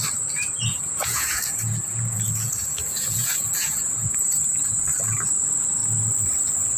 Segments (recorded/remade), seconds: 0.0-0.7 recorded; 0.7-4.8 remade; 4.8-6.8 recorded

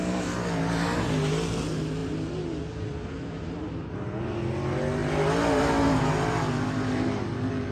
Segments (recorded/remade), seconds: 0.0-7.7 recorded

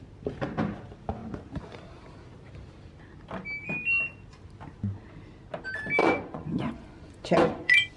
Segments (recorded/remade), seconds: 0.0-6.0 recorded; 6.0-8.0 remade

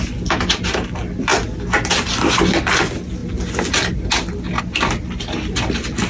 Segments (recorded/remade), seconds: 0.0-6.1 recorded

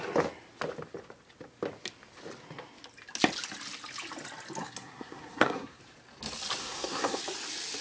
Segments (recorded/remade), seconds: 0.0-4.6 recorded; 4.6-5.8 remade; 5.8-6.6 recorded; 6.6-7.2 remade; 7.2-7.8 recorded

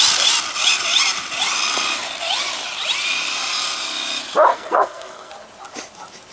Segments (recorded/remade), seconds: 0.0-4.5 recorded; 4.5-5.3 remade; 5.3-6.3 recorded